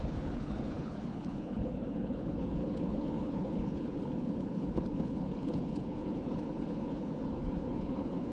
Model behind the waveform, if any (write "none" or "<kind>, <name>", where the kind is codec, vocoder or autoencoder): codec, HILCodec